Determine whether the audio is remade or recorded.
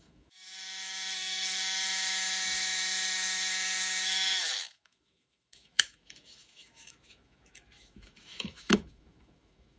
remade